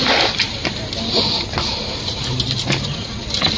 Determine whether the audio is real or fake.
real